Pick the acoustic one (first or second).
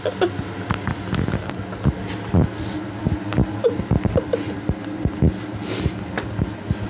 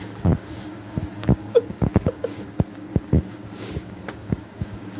first